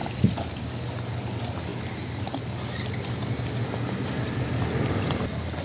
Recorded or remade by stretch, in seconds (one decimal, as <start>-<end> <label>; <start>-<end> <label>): 0.0-5.6 recorded